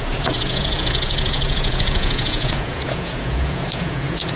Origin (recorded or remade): remade